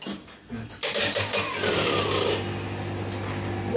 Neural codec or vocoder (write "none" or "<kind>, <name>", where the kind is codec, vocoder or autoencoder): none